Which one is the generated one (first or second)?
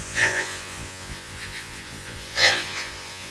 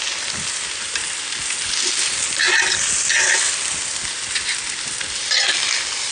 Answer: first